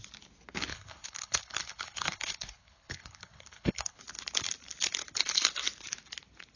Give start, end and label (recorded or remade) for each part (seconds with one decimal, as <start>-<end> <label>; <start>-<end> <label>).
0.0-0.7 recorded; 0.7-4.0 remade; 4.0-6.6 recorded